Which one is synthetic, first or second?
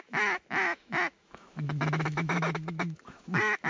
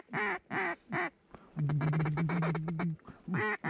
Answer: first